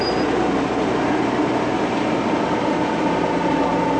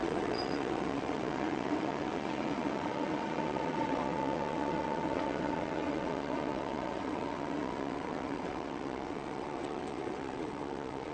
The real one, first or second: first